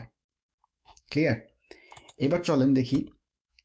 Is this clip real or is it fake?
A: fake